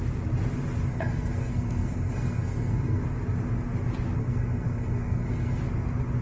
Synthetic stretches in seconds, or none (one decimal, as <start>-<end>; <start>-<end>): 0.9-3.0; 4.2-5.6